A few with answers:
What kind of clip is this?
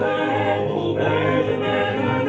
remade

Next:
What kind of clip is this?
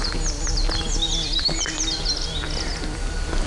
recorded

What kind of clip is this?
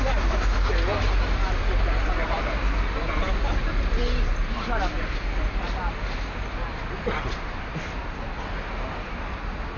recorded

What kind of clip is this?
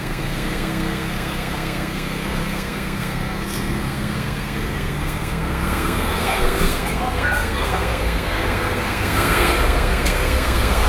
remade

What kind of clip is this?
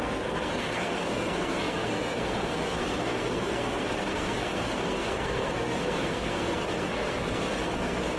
remade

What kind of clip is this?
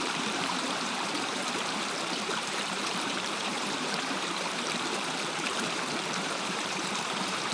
remade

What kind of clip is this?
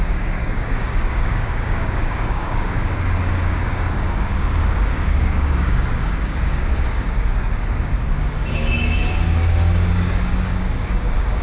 remade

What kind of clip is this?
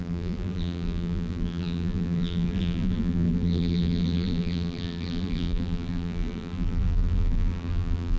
remade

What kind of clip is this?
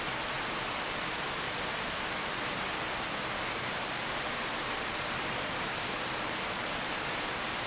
recorded